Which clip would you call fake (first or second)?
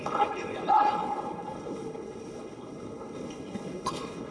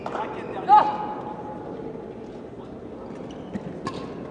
first